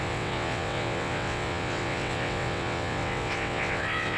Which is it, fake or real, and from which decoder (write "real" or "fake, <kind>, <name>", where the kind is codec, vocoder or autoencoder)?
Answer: fake, vocoder, WaveNeXt